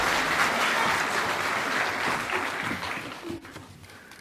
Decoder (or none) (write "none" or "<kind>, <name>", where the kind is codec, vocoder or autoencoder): none